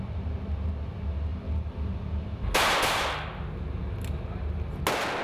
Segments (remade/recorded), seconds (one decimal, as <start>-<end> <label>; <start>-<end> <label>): 0.0-1.3 recorded; 1.3-2.4 remade; 2.4-5.2 recorded

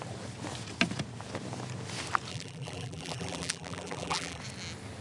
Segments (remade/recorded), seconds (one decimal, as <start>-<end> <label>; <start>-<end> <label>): 0.0-2.3 recorded; 2.3-4.4 remade; 4.4-5.0 recorded

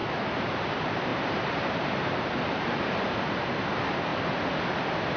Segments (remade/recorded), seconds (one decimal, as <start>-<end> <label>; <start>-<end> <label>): 0.0-4.1 remade; 4.1-4.8 recorded; 4.8-5.2 remade